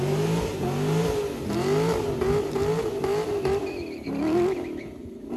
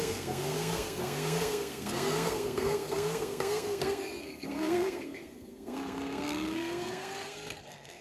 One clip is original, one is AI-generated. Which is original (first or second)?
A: first